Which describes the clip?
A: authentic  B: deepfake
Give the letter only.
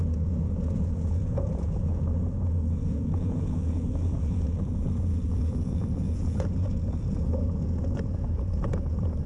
B